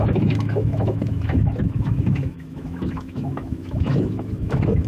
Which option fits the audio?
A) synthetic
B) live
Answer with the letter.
A